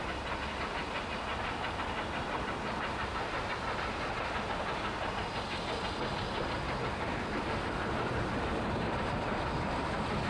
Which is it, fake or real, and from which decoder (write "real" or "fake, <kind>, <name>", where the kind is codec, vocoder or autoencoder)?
real